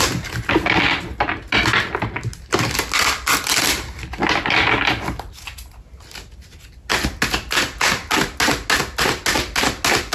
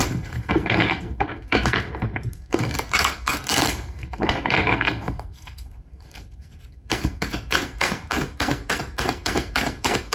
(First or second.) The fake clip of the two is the second